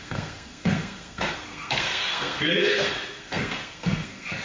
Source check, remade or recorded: remade